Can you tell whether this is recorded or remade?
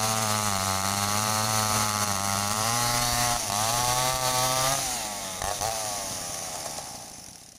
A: remade